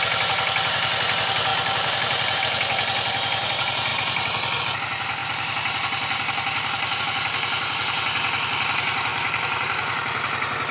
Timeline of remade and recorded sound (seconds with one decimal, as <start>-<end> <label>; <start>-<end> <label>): 0.0-1.5 recorded; 1.5-2.4 remade; 2.4-9.1 recorded; 9.1-10.7 remade